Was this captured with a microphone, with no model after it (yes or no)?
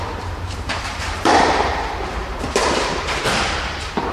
no